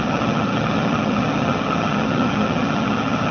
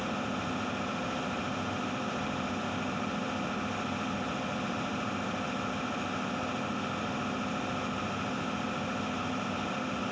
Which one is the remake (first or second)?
first